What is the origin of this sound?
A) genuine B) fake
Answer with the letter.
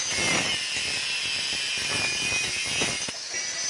A